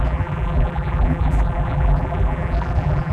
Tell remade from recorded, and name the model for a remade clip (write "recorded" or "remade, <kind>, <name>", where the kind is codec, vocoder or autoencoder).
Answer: remade, vocoder, BigVGAN v2